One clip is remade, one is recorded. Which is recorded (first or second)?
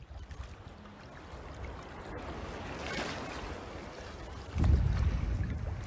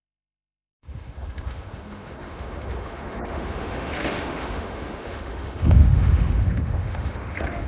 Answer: first